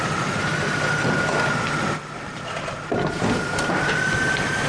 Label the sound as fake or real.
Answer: real